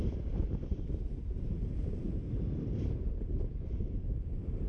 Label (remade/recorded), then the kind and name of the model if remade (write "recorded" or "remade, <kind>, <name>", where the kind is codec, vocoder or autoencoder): remade, vocoder, BigVGAN v2